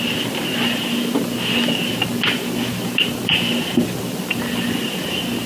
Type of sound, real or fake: real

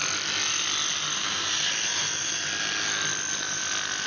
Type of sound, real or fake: real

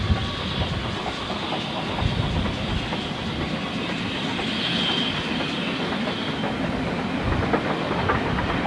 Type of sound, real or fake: real